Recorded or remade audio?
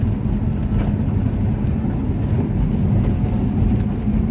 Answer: recorded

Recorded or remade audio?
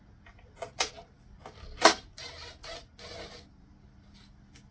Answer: recorded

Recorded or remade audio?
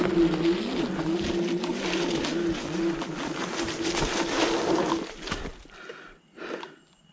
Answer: recorded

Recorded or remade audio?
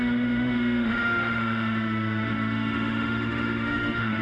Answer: remade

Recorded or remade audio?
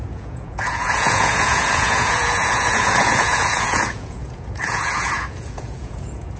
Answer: remade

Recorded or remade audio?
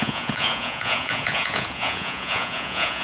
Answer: remade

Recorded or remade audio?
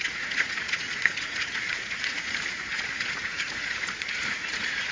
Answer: remade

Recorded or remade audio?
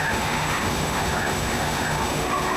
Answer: remade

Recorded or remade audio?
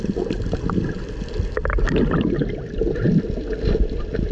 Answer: recorded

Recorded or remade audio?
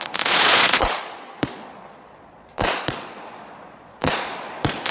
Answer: remade